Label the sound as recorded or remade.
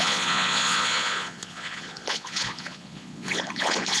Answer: remade